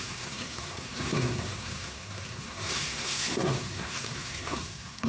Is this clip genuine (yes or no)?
no